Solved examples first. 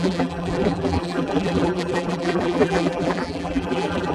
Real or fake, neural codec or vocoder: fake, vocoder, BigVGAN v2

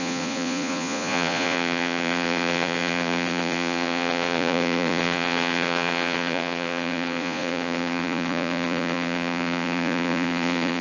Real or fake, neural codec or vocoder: fake, vocoder, Vocos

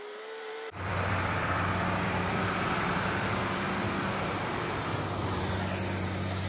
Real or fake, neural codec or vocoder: fake, vocoder, BigVGAN v2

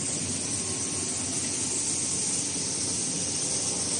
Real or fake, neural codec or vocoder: real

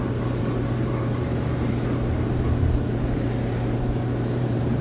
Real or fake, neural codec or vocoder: fake, vocoder, BigVGAN v2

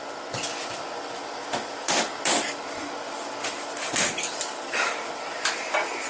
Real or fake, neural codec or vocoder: real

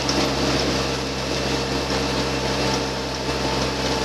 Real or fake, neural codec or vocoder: real